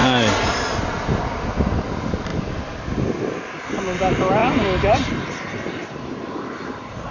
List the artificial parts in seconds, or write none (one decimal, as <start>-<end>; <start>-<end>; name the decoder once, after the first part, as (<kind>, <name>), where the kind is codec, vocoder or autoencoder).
none